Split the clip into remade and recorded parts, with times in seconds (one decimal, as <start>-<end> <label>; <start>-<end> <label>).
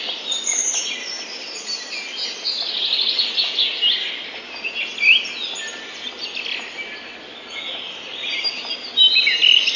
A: 0.0-9.8 recorded